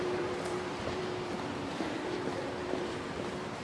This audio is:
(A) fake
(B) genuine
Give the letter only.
A